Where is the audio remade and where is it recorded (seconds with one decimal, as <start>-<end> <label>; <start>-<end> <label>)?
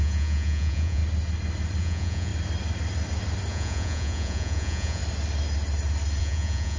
0.0-1.0 remade; 1.0-1.8 recorded; 1.8-2.3 remade; 2.3-3.5 recorded; 3.5-5.0 remade; 5.0-6.2 recorded; 6.2-6.8 remade